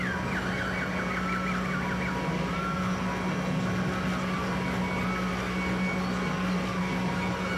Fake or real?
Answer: real